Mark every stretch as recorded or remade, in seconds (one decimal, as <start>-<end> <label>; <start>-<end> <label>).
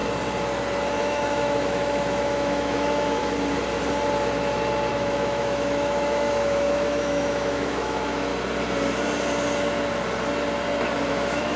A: 0.0-1.0 recorded; 1.0-3.2 remade; 3.2-4.9 recorded; 4.9-8.3 remade; 8.3-11.1 recorded; 11.1-11.6 remade